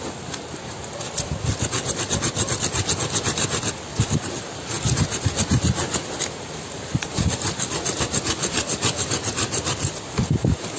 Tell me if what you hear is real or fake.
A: real